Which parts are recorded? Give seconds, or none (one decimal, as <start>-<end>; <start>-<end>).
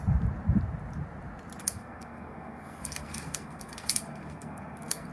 0.0-1.6